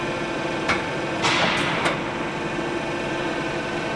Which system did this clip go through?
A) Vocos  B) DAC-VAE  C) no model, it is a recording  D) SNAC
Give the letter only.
C